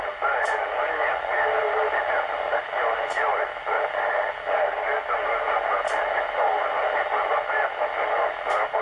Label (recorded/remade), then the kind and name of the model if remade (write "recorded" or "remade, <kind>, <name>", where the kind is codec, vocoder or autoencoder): recorded